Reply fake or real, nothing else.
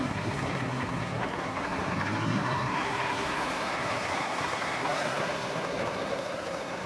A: fake